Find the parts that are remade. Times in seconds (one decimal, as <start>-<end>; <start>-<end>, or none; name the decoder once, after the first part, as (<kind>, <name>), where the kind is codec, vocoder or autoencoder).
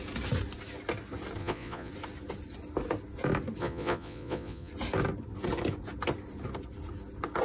1.4-1.9 (vocoder, Vocos); 3.6-4.7